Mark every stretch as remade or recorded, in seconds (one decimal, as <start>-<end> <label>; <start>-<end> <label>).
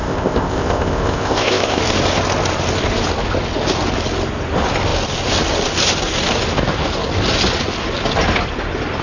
0.0-1.8 remade; 1.8-9.0 recorded